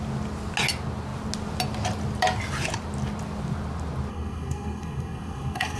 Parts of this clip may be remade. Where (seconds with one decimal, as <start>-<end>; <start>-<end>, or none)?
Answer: 4.1-5.8